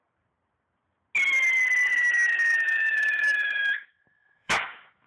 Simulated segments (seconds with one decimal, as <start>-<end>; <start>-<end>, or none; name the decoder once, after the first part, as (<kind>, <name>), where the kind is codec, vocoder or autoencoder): 1.9-5.1 (autoencoder, DAC-VAE)